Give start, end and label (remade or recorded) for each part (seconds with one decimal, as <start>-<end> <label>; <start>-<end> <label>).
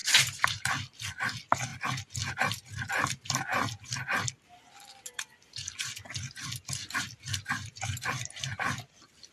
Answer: 0.0-1.7 remade; 1.7-2.5 recorded; 2.5-3.5 remade; 3.5-7.0 recorded; 7.0-9.3 remade